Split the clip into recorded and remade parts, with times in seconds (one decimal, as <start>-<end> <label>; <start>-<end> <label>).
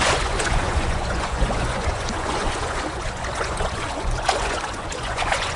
0.0-5.6 remade